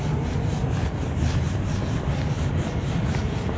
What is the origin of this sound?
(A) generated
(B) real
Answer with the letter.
B